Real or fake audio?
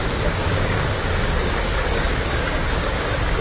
fake